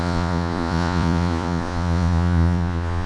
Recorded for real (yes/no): no